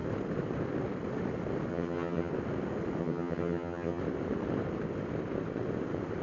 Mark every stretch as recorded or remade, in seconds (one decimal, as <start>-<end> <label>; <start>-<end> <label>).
0.0-1.7 recorded; 1.7-2.3 remade; 2.3-3.0 recorded; 3.0-4.0 remade; 4.0-6.2 recorded